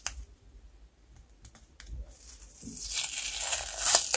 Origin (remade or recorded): recorded